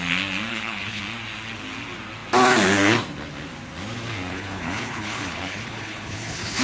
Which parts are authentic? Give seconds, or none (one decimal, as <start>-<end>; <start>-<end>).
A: 0.0-0.5; 1.0-4.3